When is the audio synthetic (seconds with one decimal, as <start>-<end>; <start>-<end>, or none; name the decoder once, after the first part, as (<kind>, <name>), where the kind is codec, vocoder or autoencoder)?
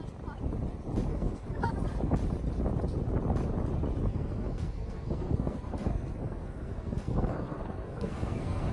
1.1-1.7 (codec, SNAC); 4.1-8.7